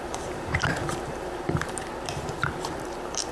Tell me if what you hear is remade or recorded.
remade